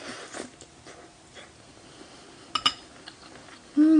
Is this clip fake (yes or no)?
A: no